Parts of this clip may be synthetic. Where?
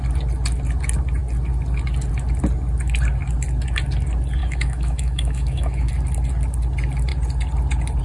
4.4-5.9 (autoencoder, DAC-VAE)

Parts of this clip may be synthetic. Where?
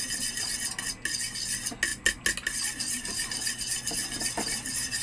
none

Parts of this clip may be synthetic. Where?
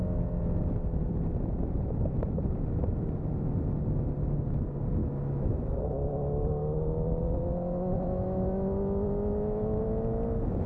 5.0-5.8 (autoencoder, DAC-VAE); 6.6-9.8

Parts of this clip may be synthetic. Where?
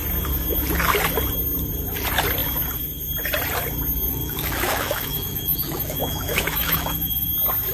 4.1-7.3 (autoencoder, DAC-VAE)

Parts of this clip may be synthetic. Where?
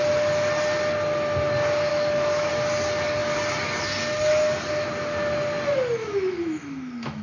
1.9-2.5 (autoencoder, DAC-VAE); 6.0-7.2